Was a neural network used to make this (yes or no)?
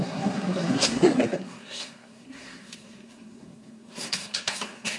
yes